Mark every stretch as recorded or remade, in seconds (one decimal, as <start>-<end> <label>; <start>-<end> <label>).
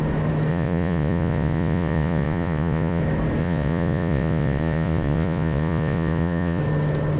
0.0-0.5 recorded; 0.5-3.0 remade; 3.0-3.4 recorded; 3.4-6.6 remade; 6.6-7.2 recorded